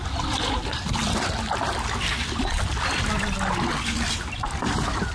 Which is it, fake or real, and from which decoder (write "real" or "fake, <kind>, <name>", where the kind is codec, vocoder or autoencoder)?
real